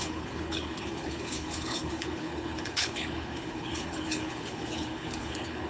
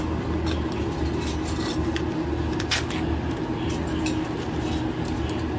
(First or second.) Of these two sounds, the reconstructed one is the first